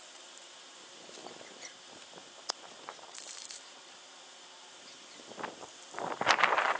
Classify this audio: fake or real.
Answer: fake